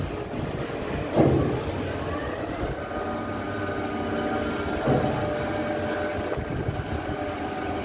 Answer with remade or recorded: recorded